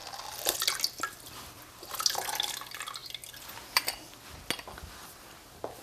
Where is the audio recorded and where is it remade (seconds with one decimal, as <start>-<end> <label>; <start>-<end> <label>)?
0.0-5.8 recorded